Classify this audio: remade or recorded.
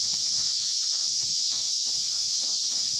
remade